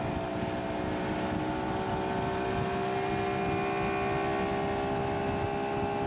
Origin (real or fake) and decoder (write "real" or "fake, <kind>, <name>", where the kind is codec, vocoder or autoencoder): real